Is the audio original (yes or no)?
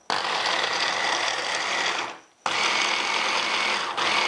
yes